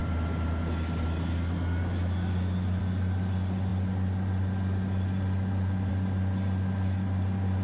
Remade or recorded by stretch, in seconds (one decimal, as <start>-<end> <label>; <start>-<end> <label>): 0.0-7.6 recorded